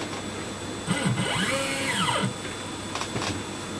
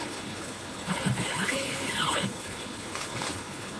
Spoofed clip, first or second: second